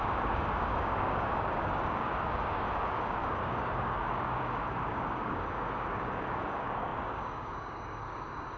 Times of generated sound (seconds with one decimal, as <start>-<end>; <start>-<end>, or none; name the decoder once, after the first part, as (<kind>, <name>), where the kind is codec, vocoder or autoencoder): 0.0-8.6 (codec, DAC)